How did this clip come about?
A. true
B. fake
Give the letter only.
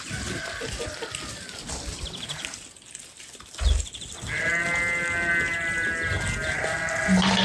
A